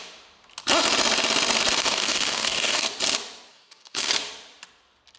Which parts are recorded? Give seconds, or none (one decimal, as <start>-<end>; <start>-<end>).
0.0-1.8; 2.9-3.5; 4.1-5.2